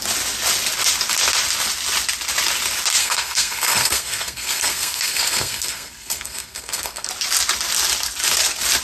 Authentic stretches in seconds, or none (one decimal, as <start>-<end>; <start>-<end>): 0.0-3.0; 7.1-8.8